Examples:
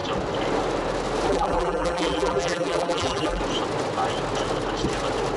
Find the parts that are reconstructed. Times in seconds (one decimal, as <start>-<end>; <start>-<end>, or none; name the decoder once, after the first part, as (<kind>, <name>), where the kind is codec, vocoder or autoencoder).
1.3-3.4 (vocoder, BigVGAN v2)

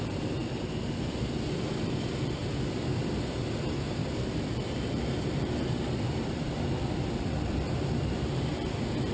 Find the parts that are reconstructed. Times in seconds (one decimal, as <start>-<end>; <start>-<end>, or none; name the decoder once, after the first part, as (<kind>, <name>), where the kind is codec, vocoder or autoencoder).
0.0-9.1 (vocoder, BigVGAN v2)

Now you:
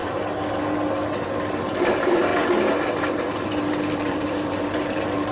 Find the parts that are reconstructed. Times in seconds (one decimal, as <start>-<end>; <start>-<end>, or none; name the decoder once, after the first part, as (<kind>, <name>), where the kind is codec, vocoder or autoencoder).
1.6-2.3 (vocoder, BigVGAN v2); 3.0-5.3

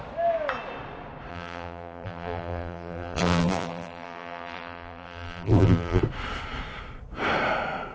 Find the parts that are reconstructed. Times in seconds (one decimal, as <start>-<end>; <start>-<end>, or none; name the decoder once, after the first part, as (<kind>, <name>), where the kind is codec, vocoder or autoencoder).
1.3-6.0 (vocoder, BigVGAN v2)